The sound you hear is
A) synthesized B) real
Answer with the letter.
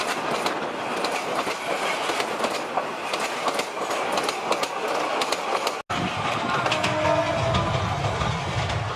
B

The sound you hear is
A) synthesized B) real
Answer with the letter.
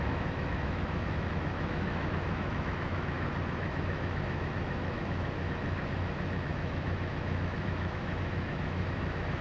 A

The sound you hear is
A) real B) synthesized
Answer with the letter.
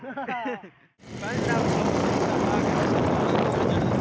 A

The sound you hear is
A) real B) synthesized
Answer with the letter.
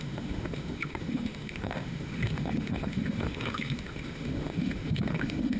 B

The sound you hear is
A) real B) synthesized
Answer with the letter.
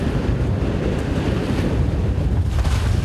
A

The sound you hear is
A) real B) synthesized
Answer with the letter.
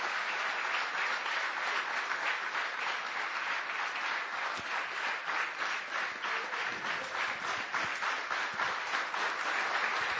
A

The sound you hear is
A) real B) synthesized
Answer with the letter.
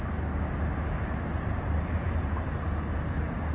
A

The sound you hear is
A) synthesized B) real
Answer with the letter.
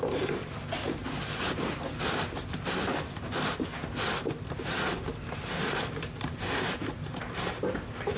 B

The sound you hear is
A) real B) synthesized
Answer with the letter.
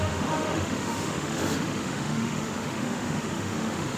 B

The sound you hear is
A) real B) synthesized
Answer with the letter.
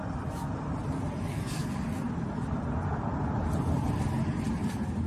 A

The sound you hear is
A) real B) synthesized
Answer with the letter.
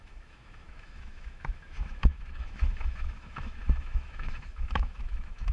B